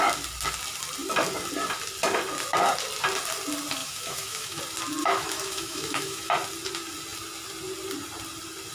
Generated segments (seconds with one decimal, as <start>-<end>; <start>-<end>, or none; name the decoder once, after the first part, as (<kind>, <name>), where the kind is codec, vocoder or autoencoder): 3.8-4.6 (autoencoder, DAC-VAE); 5.0-6.3